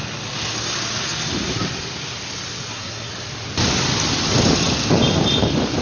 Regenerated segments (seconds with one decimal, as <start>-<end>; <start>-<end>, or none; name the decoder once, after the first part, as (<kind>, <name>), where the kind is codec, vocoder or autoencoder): 2.7-3.1 (codec, SNAC)